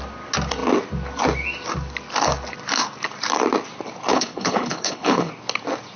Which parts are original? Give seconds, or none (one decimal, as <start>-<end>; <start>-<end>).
0.0-4.1; 5.3-6.0